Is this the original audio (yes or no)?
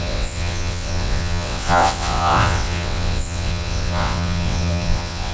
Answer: no